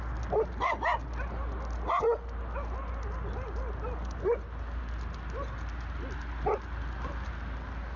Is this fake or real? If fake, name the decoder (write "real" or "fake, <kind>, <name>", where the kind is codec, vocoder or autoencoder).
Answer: real